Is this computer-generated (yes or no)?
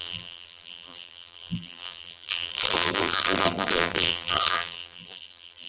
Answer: yes